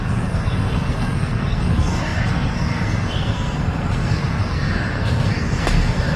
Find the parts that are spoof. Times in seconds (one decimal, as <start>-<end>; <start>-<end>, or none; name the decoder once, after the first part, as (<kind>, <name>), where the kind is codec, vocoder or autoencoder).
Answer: 0.0-6.2 (codec, SNAC)